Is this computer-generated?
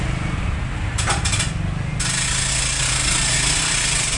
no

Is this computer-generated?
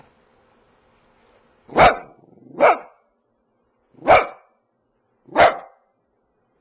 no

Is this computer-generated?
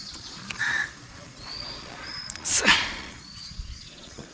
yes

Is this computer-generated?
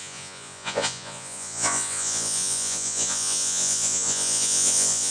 yes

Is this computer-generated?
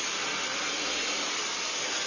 no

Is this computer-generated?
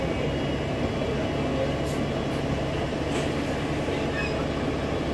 no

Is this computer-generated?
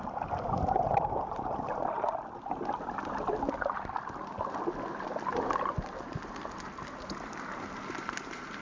no